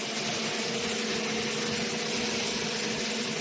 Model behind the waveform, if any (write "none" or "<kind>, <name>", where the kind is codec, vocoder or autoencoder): none